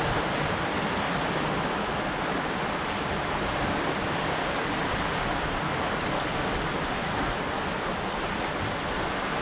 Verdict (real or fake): real